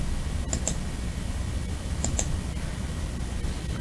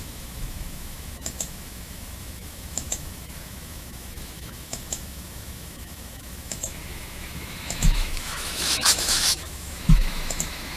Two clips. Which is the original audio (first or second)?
first